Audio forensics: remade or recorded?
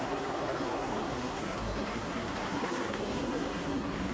remade